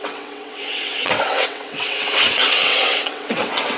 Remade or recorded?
remade